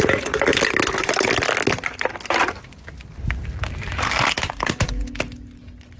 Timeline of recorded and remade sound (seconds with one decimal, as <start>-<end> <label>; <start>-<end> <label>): 0.0-6.0 recorded